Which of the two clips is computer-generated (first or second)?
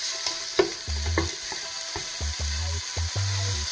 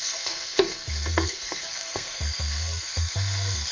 second